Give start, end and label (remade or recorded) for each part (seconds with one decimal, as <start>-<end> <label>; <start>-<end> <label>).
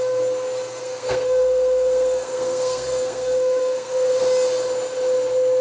0.0-0.8 recorded; 0.8-4.2 remade; 4.2-5.6 recorded